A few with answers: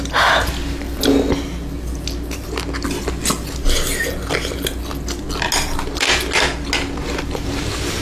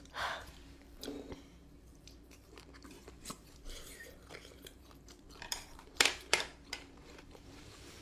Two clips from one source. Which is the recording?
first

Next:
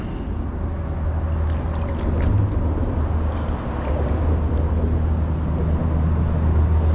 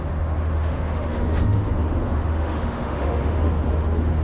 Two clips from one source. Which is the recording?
first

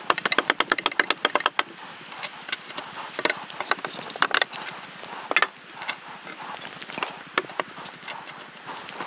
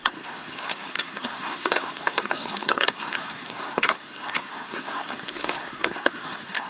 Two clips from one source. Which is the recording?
first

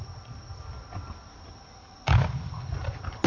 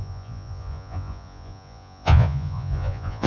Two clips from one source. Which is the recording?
first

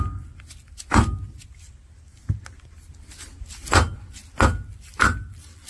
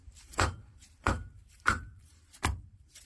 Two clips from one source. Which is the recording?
first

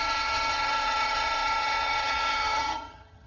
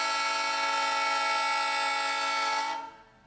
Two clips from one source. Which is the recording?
second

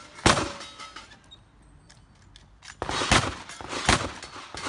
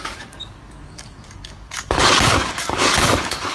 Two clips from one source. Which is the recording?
first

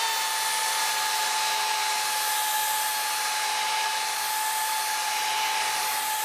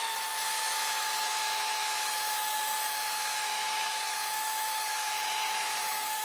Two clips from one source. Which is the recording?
first